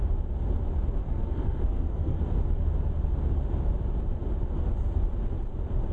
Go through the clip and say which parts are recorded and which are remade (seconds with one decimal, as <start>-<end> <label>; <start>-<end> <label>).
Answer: 0.0-1.0 recorded; 1.0-2.2 remade; 2.2-5.9 recorded